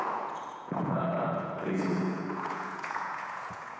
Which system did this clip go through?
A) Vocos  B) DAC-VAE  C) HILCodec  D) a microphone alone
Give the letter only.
A